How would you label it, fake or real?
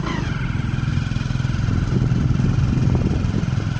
real